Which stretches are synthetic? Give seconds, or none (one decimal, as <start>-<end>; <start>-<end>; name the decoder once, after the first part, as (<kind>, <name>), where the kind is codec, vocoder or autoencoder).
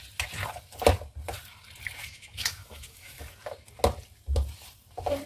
2.0-3.2 (autoencoder, DAC-VAE)